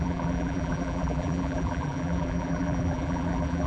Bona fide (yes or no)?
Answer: no